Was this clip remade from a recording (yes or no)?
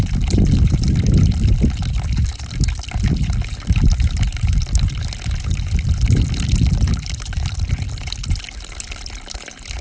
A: no